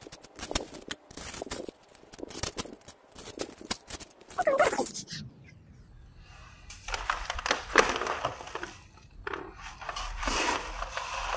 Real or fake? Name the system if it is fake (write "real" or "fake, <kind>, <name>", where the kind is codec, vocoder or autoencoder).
fake, vocoder, BigVGAN v2